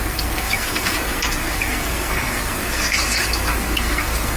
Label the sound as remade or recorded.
remade